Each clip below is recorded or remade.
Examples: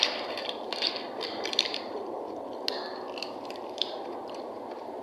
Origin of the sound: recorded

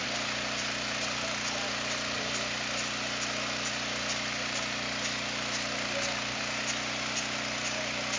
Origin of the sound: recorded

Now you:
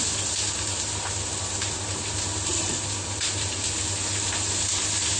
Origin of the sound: recorded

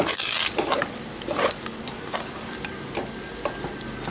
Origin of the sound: remade